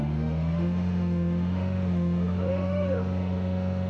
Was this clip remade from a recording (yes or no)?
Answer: yes